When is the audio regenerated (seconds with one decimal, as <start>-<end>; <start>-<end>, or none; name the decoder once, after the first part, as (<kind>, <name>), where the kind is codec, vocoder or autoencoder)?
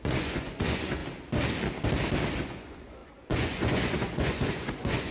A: 0.0-1.0 (vocoder, Vocos); 2.4-5.1